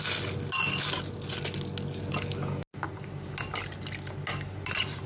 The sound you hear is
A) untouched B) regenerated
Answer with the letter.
A